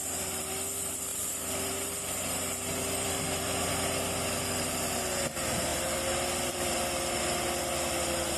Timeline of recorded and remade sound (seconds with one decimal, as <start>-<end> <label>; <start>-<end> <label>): 0.0-1.1 recorded; 1.1-3.7 remade; 3.7-5.7 recorded; 5.7-7.2 remade; 7.2-8.4 recorded